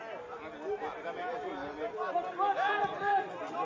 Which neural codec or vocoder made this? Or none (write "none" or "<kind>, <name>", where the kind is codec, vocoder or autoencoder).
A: none